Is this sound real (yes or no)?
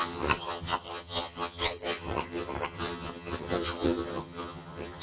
no